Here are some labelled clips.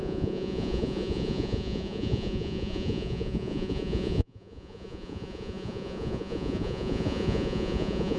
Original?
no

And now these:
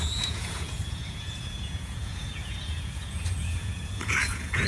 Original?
no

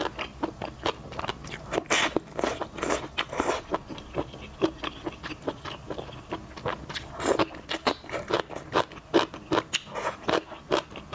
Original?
yes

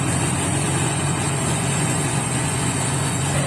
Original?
no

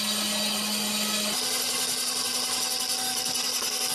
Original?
yes